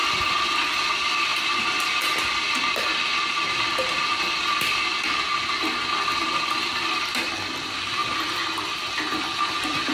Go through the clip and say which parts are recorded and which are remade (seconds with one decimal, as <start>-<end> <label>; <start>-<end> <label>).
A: 0.0-1.3 recorded; 1.3-2.6 remade; 2.6-3.1 recorded; 3.1-4.6 remade; 4.6-9.9 recorded

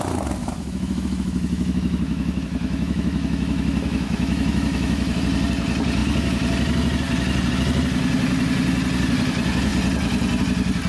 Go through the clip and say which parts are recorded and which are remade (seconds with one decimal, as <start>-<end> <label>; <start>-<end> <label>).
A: 0.0-0.4 recorded; 0.4-5.2 remade; 5.2-10.9 recorded

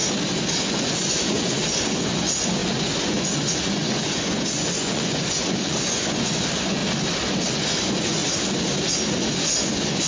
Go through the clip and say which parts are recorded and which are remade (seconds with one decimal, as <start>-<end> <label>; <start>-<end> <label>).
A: 0.0-0.6 recorded; 0.6-6.8 remade; 6.8-7.5 recorded; 7.5-8.2 remade; 8.2-9.1 recorded; 9.1-10.1 remade

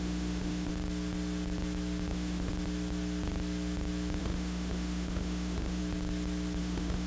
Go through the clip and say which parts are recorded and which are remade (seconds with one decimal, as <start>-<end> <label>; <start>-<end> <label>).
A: 0.0-0.7 remade; 0.7-2.1 recorded; 2.1-2.5 remade; 2.5-4.2 recorded; 4.2-5.8 remade; 5.8-6.6 recorded; 6.6-7.1 remade

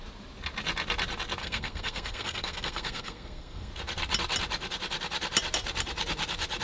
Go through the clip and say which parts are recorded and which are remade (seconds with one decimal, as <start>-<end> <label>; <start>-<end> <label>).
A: 0.0-1.4 recorded; 1.4-3.7 remade; 3.7-6.6 recorded

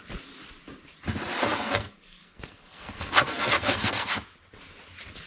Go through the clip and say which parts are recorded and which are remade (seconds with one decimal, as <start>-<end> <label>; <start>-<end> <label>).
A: 0.0-1.5 recorded; 1.5-4.1 remade; 4.1-5.3 recorded